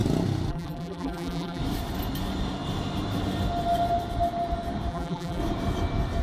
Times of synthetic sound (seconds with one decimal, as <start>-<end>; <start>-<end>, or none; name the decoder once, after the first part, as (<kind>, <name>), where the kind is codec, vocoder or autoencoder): 0.5-1.6 (vocoder, BigVGAN v2); 4.9-5.4